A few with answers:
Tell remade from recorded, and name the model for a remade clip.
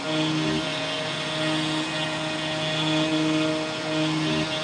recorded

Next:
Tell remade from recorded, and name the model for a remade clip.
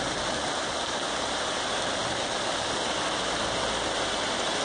recorded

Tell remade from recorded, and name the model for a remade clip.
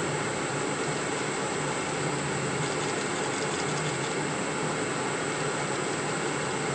recorded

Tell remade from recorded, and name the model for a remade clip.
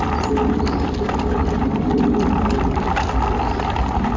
recorded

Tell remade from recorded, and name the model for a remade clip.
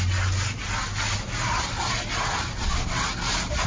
recorded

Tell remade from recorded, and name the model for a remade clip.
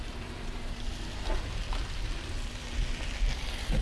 recorded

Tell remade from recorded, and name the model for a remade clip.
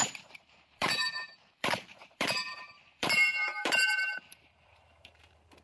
remade, vocoder, BigVGAN v2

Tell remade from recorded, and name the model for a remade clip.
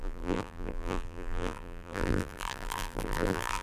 remade, vocoder, BigVGAN v2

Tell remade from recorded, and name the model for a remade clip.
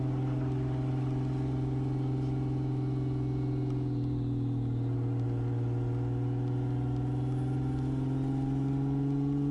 recorded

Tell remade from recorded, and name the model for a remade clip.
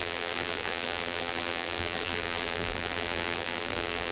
remade, vocoder, BigVGAN v2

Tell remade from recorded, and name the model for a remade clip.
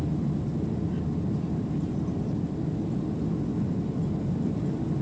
recorded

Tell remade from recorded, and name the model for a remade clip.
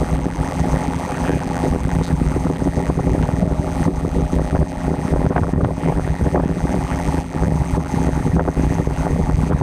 remade, vocoder, BigVGAN v2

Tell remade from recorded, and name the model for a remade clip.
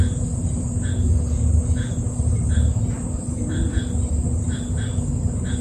recorded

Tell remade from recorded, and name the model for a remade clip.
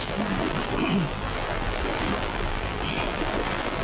remade, vocoder, BigVGAN v2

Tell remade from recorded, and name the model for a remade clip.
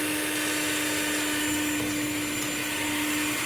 recorded